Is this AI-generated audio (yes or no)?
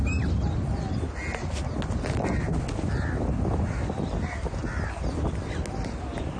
no